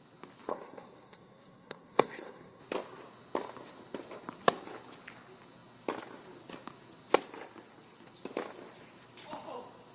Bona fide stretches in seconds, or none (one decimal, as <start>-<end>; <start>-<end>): 0.0-0.5; 2.6-9.9